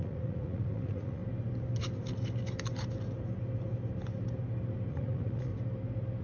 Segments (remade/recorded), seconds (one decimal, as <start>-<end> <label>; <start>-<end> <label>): 0.0-1.2 remade; 1.2-4.9 recorded; 4.9-5.5 remade; 5.5-6.2 recorded